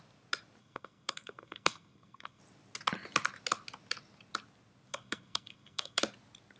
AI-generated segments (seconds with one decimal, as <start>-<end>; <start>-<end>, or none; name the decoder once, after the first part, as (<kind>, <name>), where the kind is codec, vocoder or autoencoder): 0.6-2.4 (codec, SNAC); 4.9-6.0